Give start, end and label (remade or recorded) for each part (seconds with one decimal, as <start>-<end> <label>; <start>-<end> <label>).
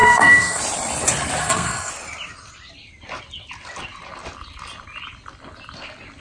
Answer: 0.0-0.6 remade; 0.6-1.4 recorded; 1.4-1.9 remade; 1.9-6.2 recorded